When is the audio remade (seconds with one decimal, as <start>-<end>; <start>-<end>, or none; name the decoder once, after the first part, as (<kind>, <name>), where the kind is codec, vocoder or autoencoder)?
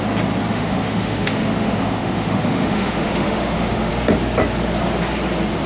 0.5-3.9 (autoencoder, DAC-VAE)